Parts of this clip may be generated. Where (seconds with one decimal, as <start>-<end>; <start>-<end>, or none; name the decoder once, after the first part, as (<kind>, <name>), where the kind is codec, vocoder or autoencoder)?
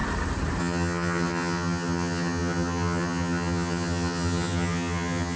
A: 0.6-5.4 (vocoder, HiFi-GAN)